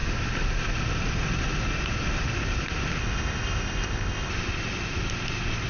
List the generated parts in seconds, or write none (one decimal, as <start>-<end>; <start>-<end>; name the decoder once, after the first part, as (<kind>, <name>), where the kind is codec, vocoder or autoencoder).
3.0-4.3 (codec, ZipCodec)